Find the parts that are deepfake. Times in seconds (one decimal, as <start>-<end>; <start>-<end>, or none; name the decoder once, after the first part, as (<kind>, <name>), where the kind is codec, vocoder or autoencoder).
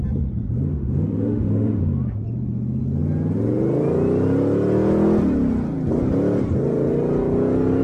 0.7-1.8 (autoencoder, DAC-VAE)